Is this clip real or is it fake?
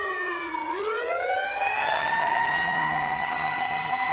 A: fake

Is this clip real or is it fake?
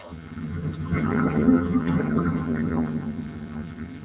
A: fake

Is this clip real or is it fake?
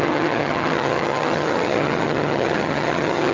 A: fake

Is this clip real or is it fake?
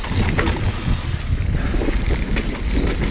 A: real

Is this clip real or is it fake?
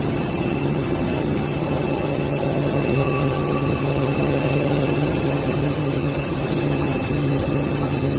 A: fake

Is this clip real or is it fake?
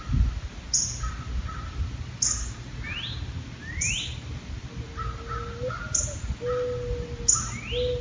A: real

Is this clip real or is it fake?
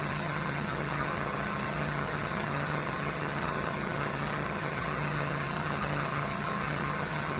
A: fake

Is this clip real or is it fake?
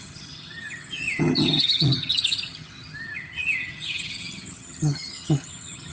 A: fake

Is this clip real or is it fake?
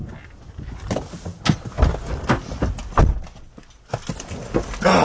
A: real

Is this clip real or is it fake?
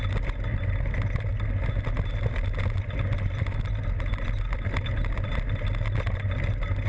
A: real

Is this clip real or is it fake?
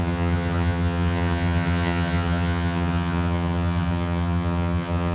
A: fake